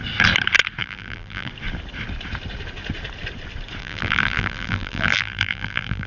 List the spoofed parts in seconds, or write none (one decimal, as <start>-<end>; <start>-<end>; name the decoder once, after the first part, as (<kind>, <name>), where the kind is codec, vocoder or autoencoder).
0.8-1.5 (vocoder, BigVGAN v2); 3.8-6.1